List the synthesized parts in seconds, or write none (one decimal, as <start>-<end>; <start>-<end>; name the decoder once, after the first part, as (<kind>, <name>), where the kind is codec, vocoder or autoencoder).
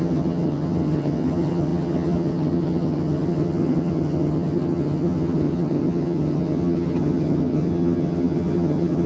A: 0.0-9.1 (vocoder, HiFi-GAN)